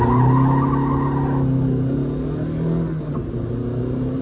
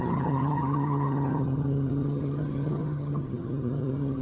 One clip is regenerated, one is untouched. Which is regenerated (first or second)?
second